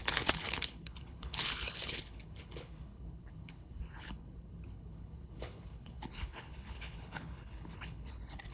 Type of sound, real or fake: fake